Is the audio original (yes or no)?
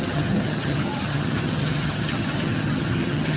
no